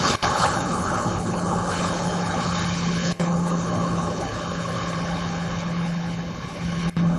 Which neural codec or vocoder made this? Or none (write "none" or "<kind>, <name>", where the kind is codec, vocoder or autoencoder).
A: codec, HILCodec